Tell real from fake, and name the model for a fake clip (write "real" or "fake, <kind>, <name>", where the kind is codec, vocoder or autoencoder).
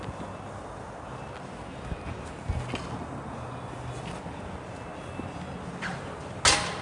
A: real